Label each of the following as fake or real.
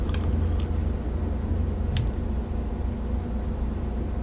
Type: real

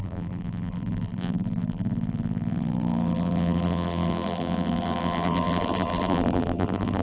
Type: fake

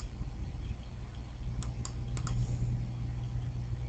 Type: real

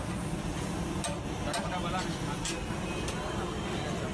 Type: real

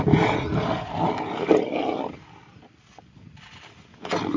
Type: real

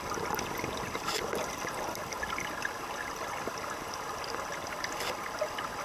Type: fake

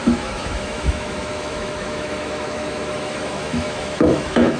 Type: fake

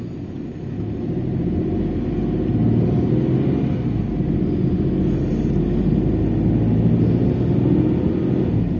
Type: real